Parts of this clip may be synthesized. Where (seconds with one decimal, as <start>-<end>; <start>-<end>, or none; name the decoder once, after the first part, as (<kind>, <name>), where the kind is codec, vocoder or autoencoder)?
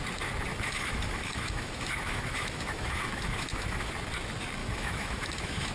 0.5-3.9 (autoencoder, DAC-VAE); 4.6-5.7